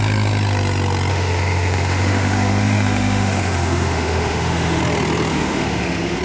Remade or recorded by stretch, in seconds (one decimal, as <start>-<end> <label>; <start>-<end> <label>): 0.0-1.1 recorded; 1.1-4.8 remade; 4.8-5.3 recorded; 5.3-6.2 remade